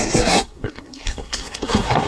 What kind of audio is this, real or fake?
fake